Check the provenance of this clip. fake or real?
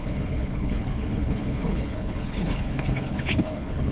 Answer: fake